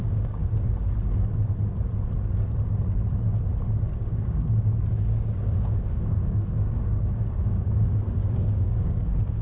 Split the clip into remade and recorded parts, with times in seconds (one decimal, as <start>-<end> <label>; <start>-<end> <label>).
0.0-0.4 remade; 0.4-4.0 recorded; 4.0-9.4 remade